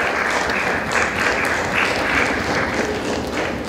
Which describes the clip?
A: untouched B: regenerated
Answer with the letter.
A